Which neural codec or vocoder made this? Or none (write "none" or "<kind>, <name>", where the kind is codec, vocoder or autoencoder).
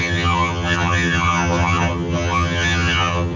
vocoder, HiFi-GAN